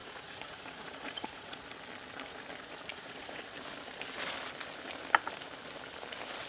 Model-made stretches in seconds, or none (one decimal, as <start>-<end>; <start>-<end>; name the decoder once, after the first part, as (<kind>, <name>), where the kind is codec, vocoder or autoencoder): 0.0-1.6 (vocoder, Vocos); 2.9-3.4